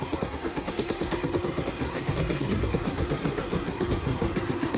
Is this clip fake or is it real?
fake